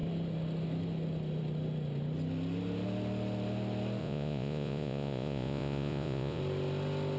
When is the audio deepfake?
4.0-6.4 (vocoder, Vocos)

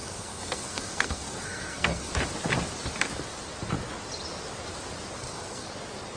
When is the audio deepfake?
0.0-2.1 (codec, SNAC); 5.2-5.7

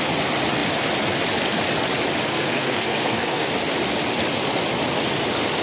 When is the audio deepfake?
2.3-3.5 (codec, SNAC)

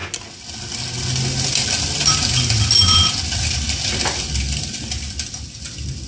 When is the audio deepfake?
none

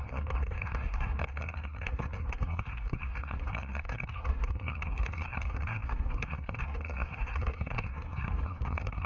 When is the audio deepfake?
0.0-9.1 (codec, SNAC)